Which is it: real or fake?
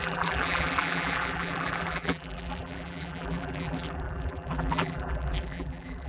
fake